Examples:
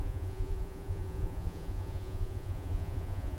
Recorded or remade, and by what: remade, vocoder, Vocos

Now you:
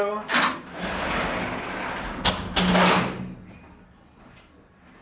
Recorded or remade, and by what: recorded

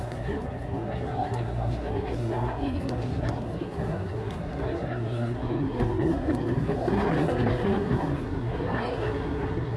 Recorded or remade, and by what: remade, codec, SNAC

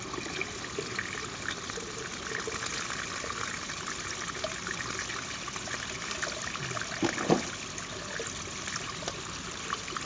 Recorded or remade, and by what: recorded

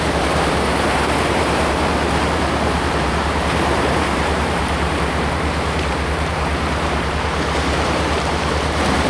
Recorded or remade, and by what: remade, vocoder, BigVGAN v2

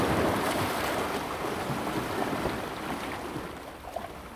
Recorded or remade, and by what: recorded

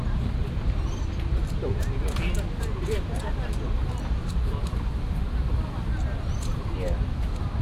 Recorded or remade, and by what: recorded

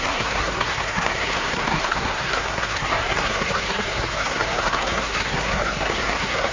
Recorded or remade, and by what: remade, codec, SNAC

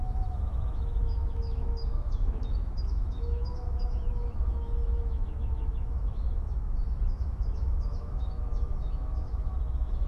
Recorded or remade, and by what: remade, autoencoder, DAC-VAE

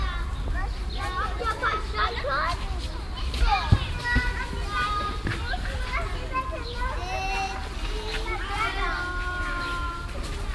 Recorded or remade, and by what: recorded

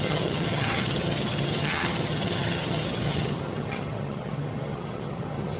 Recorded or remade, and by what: remade, vocoder, HiFi-GAN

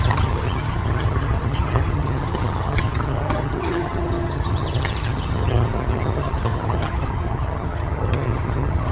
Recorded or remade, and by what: remade, vocoder, HiFi-GAN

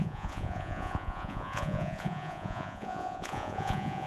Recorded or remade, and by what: remade, vocoder, Vocos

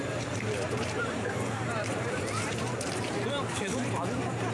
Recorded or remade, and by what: remade, vocoder, BigVGAN v2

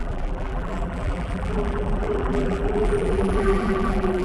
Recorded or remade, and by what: remade, vocoder, BigVGAN v2